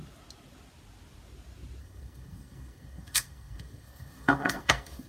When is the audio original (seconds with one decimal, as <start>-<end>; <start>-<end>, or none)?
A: 0.0-1.8